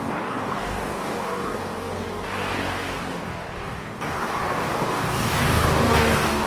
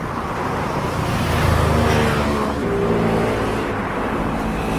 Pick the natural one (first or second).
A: second